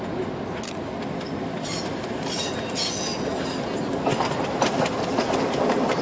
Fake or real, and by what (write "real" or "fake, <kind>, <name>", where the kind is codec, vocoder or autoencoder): real